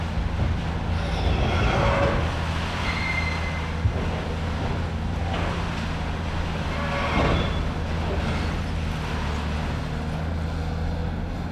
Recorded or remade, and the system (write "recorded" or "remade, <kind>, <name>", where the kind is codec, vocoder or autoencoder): recorded